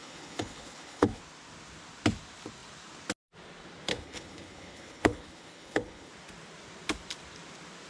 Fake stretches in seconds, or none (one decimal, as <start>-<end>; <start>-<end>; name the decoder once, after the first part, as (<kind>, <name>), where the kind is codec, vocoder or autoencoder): 0.0-1.2 (codec, HILCodec); 3.9-6.1